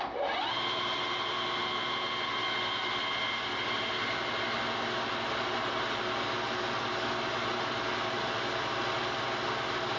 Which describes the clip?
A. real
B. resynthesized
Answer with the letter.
A